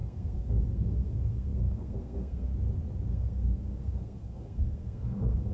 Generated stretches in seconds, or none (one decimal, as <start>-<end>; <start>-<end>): 0.0-2.5; 3.1-5.5